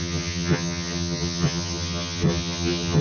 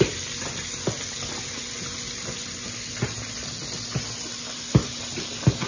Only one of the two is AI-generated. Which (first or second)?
first